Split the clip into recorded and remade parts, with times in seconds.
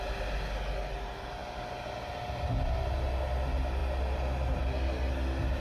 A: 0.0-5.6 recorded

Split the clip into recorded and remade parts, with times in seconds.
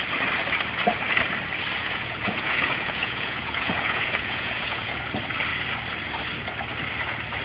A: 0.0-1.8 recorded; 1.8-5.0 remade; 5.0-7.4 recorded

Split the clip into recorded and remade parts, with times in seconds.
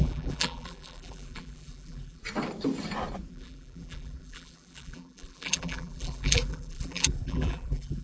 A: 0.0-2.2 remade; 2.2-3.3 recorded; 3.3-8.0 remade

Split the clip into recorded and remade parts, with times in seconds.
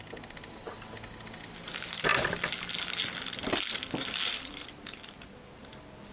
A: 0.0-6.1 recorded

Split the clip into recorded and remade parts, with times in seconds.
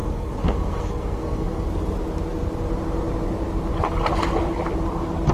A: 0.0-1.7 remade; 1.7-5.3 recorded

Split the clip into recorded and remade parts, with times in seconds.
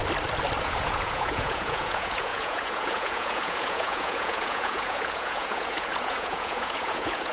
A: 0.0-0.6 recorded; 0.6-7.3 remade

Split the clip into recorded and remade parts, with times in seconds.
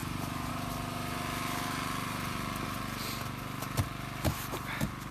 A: 0.0-0.5 remade; 0.5-5.1 recorded